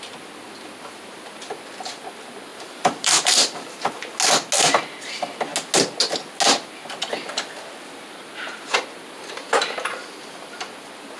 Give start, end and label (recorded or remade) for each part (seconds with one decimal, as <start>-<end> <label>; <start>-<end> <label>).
0.0-2.5 recorded; 2.5-3.9 remade; 3.9-11.2 recorded